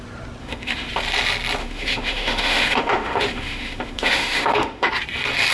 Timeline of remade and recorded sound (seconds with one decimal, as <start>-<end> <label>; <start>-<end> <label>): 0.0-0.4 recorded; 0.4-0.9 remade; 0.9-1.6 recorded; 1.6-4.9 remade; 4.9-5.5 recorded